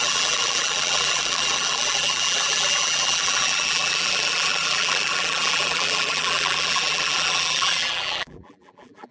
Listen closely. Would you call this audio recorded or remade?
remade